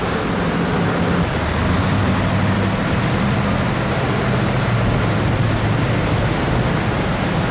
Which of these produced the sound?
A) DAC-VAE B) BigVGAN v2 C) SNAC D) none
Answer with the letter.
D